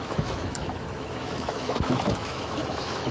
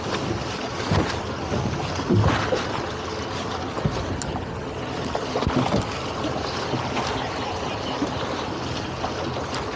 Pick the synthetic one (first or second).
first